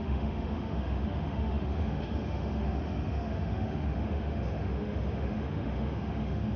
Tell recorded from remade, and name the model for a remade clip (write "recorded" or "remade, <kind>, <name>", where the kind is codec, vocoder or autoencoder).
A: remade, autoencoder, DAC-VAE